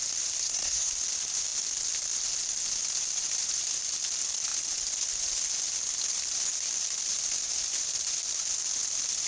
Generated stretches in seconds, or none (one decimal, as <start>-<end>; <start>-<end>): 0.4-0.9